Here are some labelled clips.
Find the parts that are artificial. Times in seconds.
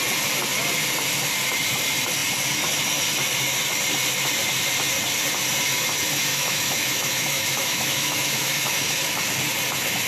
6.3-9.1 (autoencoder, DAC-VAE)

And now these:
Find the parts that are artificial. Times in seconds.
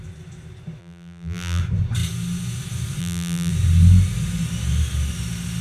0.8-1.6 (vocoder, BigVGAN v2); 3.0-3.5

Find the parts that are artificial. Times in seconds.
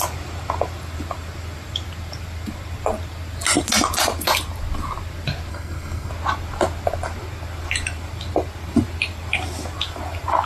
5.5-6.1 (codec, SNAC)